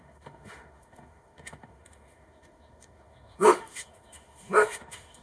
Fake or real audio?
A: fake